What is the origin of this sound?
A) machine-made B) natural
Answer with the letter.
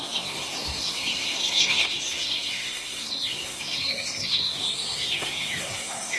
A